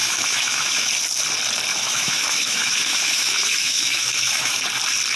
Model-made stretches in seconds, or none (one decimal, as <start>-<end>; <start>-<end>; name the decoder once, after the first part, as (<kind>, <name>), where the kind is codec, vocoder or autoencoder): 0.0-0.9 (autoencoder, DAC-VAE); 1.7-4.6